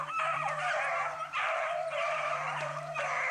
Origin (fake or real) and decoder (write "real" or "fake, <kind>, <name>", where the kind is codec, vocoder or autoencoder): fake, vocoder, BigVGAN v2